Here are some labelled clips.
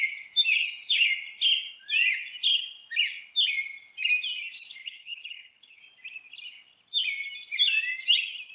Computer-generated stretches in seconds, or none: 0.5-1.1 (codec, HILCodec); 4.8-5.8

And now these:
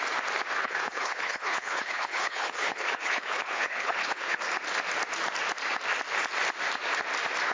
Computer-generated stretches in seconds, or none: 0.6-4.4 (codec, HILCodec)

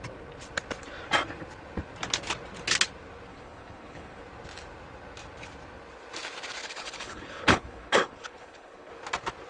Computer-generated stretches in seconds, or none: 3.3-4.2 (codec, HILCodec); 6.6-8.9